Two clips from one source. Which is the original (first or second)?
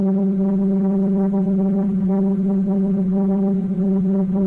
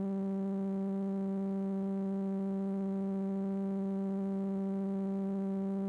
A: second